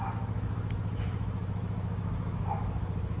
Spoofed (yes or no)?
yes